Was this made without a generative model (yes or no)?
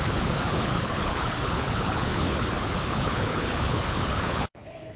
no